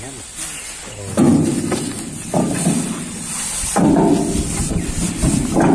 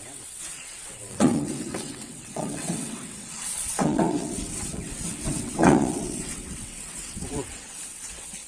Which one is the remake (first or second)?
second